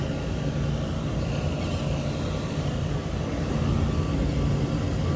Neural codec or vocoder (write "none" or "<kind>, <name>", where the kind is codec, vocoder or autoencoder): none